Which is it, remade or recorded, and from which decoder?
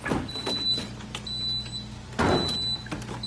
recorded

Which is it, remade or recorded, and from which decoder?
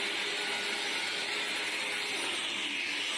recorded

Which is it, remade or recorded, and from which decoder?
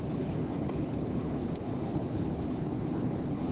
remade, codec, HILCodec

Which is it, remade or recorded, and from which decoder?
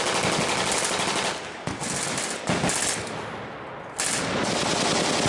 recorded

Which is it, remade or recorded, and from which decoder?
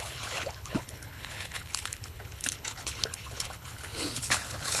remade, codec, HILCodec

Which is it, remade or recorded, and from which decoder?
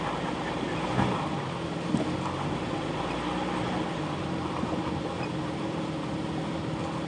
recorded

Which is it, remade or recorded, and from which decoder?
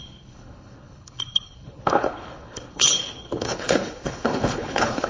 remade, codec, HILCodec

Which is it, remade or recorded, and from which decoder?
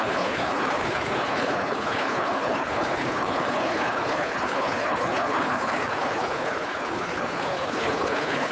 remade, codec, HILCodec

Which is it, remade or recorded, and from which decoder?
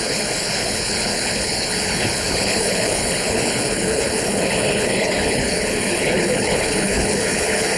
remade, codec, HILCodec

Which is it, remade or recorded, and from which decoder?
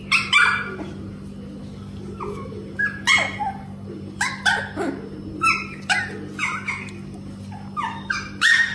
recorded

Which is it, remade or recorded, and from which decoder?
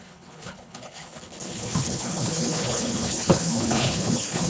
remade, codec, HILCodec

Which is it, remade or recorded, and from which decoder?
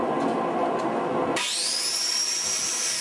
recorded